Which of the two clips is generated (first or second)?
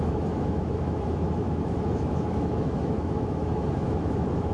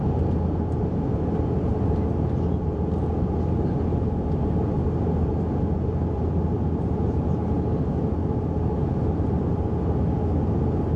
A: first